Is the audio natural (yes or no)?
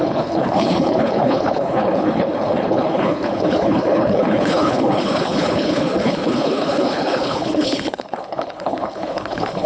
no